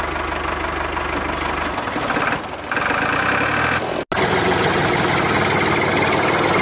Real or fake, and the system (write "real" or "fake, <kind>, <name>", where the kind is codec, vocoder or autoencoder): real